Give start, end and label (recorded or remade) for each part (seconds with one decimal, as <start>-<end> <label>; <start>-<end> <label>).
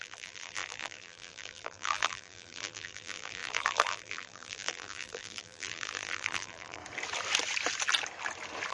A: 0.0-6.8 remade; 6.8-8.7 recorded